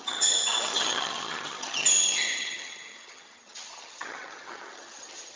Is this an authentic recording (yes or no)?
no